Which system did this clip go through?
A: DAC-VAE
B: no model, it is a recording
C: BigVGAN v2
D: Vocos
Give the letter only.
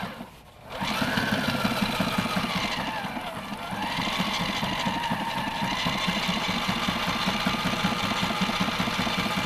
B